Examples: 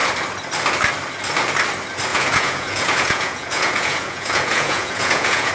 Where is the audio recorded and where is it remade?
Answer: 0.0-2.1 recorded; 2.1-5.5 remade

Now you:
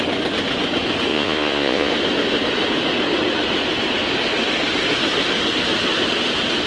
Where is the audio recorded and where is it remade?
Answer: 0.0-1.1 recorded; 1.1-1.9 remade; 1.9-6.7 recorded